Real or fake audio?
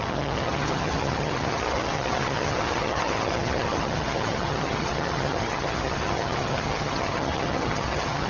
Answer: fake